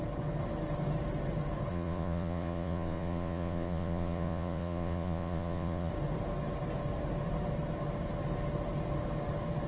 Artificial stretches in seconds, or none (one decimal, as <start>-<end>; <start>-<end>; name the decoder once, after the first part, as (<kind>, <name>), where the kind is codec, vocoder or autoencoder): 1.7-5.9 (vocoder, Vocos)